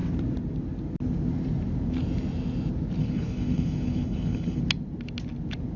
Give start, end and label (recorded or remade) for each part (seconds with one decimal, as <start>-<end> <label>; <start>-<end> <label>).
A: 0.0-3.0 recorded; 3.0-4.6 remade; 4.6-5.8 recorded